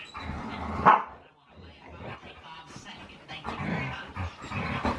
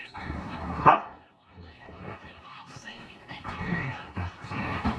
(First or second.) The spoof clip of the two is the second